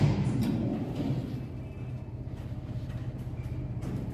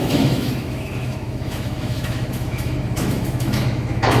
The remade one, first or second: second